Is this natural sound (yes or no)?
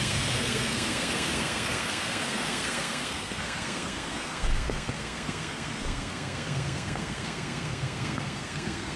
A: no